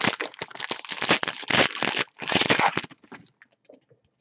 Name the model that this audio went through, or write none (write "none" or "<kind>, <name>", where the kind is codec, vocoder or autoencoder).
none